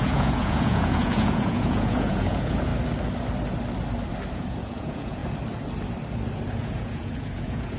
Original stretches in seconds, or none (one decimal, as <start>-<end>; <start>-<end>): 2.7-4.3; 5.2-6.6